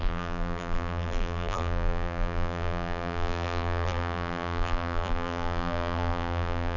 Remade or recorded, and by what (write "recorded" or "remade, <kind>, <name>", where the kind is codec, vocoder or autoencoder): remade, vocoder, BigVGAN v2